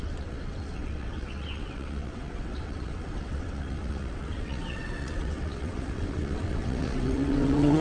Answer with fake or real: fake